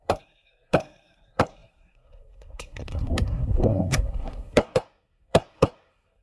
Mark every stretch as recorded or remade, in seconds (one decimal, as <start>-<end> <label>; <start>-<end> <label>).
0.0-6.2 remade